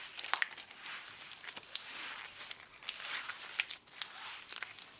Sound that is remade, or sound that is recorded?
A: remade